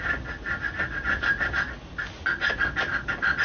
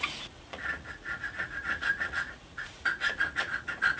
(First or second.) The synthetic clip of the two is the second